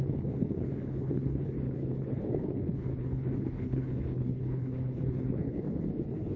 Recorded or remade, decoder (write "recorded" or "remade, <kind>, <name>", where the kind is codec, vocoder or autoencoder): remade, codec, HILCodec